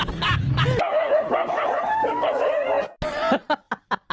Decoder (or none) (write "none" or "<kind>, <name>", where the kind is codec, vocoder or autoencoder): none